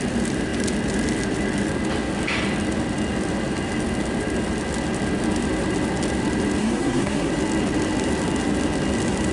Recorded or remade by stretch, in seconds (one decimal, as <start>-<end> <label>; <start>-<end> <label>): 0.0-6.6 recorded; 6.6-7.3 remade; 7.3-9.3 recorded